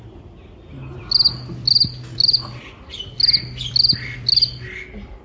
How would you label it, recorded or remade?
recorded